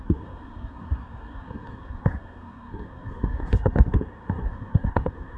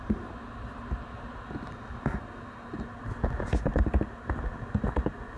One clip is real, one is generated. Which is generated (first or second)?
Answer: first